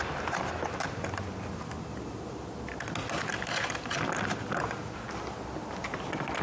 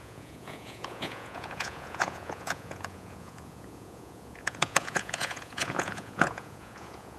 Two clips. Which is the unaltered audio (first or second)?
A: first